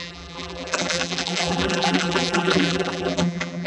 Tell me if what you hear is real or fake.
fake